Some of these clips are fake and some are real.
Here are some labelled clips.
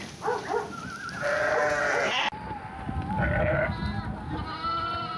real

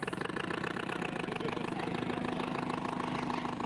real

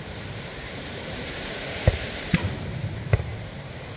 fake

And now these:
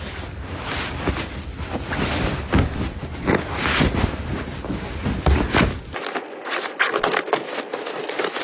real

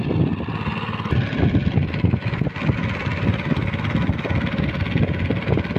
real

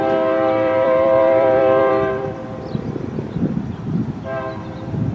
fake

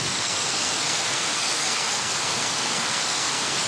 fake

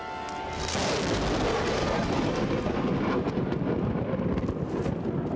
real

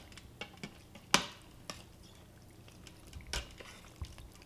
real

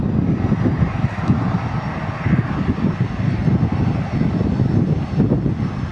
real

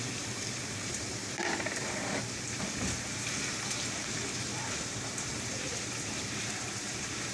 fake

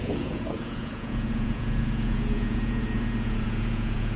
fake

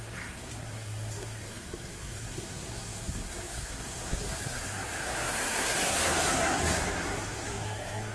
fake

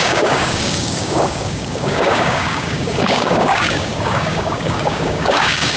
fake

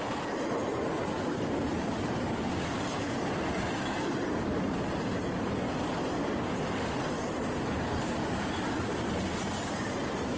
real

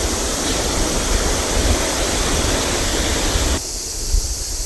real